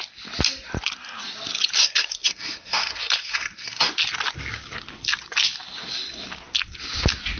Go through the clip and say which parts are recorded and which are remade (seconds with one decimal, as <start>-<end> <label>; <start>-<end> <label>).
0.0-1.8 recorded; 1.8-3.9 remade; 3.9-7.4 recorded